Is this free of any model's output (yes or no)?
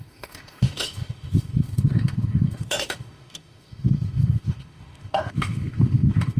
no